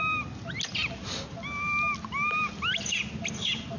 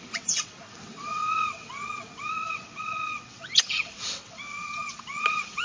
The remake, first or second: second